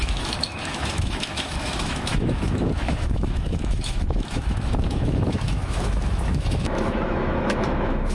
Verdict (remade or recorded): remade